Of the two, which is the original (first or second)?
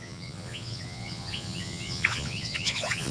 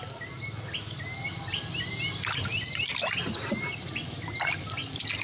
second